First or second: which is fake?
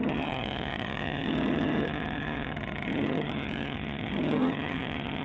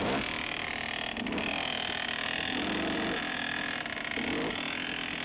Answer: first